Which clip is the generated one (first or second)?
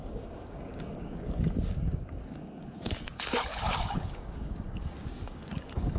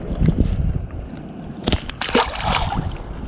first